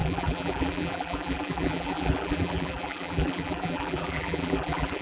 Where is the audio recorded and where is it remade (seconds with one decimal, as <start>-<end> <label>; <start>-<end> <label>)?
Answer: 0.0-5.0 remade